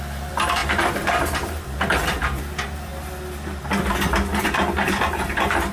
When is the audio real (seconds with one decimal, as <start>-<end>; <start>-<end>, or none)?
2.9-4.4